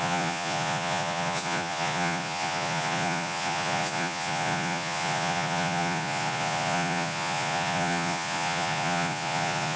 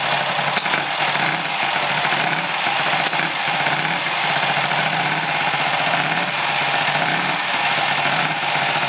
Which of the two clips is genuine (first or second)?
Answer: second